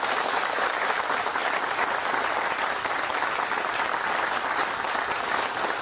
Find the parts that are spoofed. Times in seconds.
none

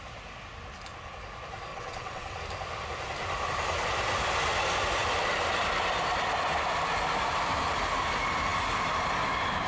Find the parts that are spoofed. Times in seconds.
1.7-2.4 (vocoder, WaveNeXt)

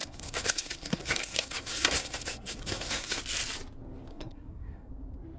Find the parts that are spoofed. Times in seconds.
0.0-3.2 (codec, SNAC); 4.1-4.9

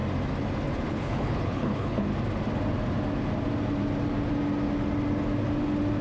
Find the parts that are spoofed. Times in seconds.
0.9-2.1 (codec, HILCodec)

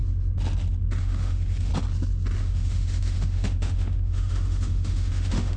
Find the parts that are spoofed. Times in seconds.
1.0-1.7 (autoencoder, DAC-VAE); 2.4-5.6